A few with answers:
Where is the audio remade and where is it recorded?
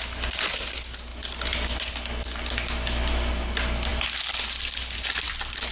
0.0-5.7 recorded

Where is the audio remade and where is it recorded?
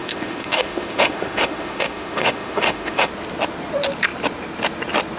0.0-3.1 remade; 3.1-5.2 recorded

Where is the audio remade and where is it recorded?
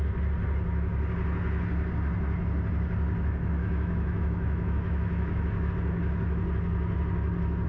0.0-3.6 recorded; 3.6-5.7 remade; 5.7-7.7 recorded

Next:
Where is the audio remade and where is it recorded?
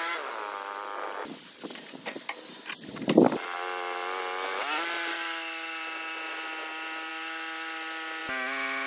0.0-8.9 recorded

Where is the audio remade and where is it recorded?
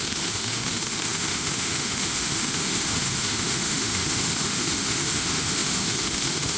0.0-6.6 remade